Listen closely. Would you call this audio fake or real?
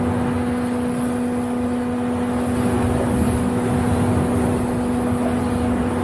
real